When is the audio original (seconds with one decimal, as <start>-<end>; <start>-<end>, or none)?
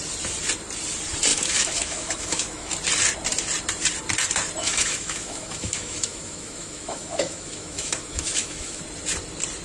0.0-1.3; 2.7-4.6; 8.8-9.6